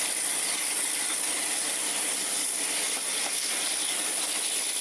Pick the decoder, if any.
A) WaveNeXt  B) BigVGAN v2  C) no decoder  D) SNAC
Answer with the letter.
C